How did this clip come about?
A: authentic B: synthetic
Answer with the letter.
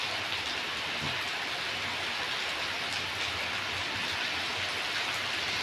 A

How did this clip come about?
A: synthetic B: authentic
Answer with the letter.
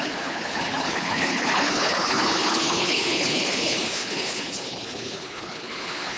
A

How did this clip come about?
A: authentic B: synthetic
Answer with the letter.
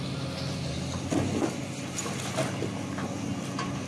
A